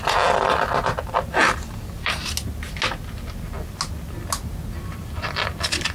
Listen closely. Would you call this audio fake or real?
real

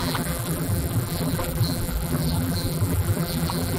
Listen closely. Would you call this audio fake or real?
fake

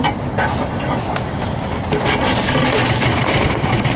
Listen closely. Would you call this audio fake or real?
fake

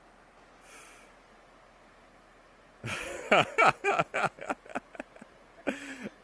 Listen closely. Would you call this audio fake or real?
real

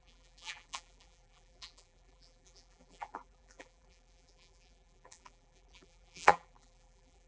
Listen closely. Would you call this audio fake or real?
fake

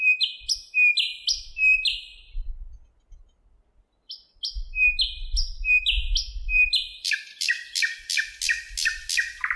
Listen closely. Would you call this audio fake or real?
real